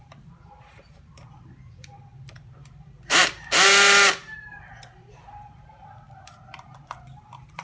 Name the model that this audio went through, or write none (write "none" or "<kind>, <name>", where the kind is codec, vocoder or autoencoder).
vocoder, BigVGAN v2